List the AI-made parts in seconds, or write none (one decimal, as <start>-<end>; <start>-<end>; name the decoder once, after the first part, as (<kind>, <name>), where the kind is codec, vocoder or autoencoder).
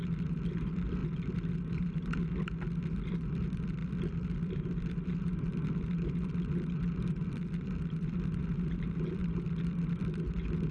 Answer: 0.0-1.0 (vocoder, BigVGAN v2); 3.0-10.7